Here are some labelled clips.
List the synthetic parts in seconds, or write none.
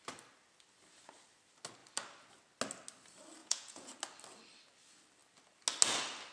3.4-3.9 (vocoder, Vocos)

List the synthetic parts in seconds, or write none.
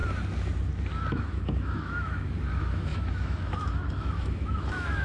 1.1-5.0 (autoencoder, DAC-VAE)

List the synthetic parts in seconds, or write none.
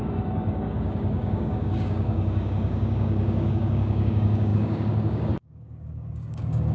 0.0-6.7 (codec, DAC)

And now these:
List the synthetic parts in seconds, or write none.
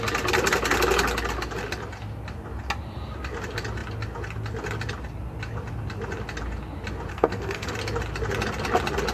7.1-7.7 (codec, SNAC)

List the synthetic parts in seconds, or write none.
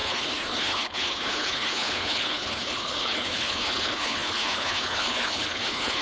0.0-6.0 (codec, HILCodec)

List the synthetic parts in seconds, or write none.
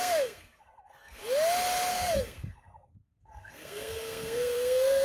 0.0-1.2 (codec, SNAC); 1.9-5.0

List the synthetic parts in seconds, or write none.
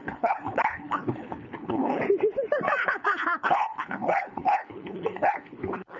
0.0-2.0 (codec, HILCodec); 2.8-6.0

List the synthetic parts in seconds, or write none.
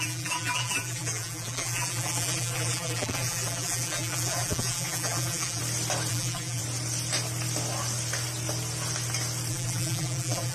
0.0-5.6 (vocoder, BigVGAN v2); 6.1-6.6; 9.5-10.5